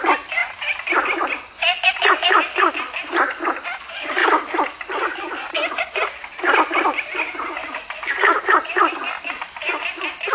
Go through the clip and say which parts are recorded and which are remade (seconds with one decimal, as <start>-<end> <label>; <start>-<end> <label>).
0.0-10.3 recorded